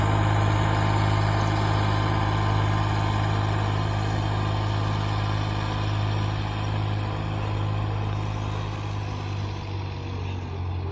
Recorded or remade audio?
recorded